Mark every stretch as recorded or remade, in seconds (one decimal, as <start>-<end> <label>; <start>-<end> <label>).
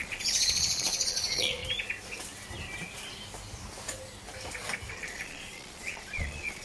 0.0-1.6 remade; 1.6-4.9 recorded; 4.9-6.6 remade